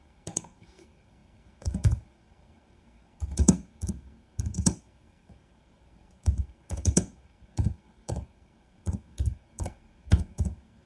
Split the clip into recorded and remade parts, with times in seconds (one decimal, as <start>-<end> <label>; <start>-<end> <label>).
0.0-10.9 remade